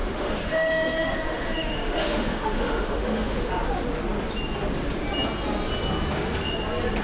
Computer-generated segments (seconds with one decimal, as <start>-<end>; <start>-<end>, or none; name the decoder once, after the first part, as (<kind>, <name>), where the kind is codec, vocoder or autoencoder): 0.0-3.5 (autoencoder, DAC-VAE)